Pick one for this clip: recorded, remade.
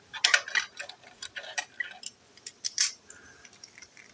recorded